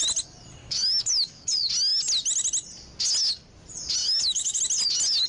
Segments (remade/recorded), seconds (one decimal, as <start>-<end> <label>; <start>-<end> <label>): 0.0-0.6 recorded; 0.6-1.5 remade; 1.5-4.0 recorded; 4.0-4.6 remade; 4.6-5.3 recorded